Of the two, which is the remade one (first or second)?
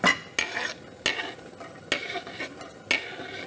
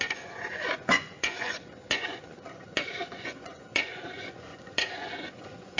second